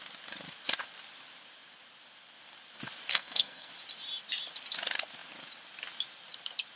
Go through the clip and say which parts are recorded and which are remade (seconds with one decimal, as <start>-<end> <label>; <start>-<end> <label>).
0.0-3.1 recorded; 3.1-3.7 remade; 3.7-6.8 recorded